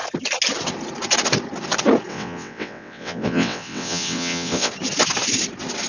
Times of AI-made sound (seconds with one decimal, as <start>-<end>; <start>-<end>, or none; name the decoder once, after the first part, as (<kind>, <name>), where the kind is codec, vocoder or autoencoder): 2.1-4.7 (vocoder, WaveNeXt)